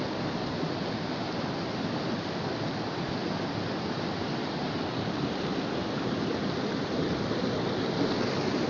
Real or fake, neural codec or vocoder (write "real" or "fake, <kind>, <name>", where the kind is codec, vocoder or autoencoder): real